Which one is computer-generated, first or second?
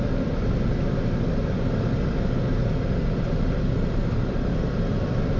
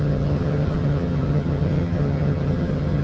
second